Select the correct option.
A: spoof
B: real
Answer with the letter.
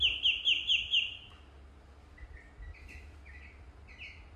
B